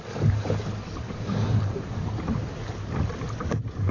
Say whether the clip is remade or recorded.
remade